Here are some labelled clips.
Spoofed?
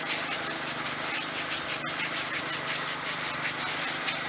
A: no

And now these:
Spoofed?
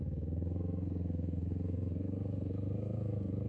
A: yes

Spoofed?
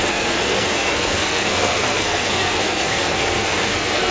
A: yes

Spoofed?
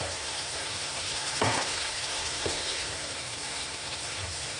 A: yes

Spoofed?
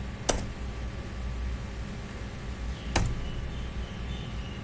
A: no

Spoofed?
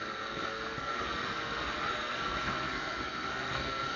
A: yes